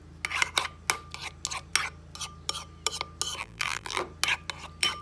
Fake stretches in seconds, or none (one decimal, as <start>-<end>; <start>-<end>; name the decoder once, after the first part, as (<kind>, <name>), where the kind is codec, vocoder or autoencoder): 3.4-4.0 (vocoder, BigVGAN v2)